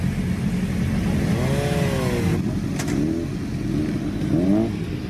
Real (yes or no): yes